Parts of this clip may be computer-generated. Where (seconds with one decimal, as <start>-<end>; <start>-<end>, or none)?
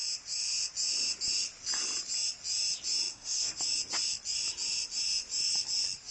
3.1-3.6